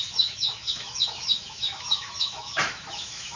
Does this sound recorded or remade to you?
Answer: remade